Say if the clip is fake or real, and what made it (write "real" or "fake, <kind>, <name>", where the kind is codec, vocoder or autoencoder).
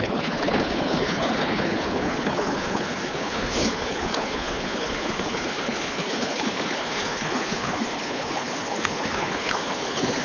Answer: fake, codec, HILCodec